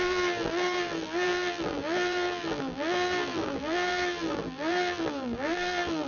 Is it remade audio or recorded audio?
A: remade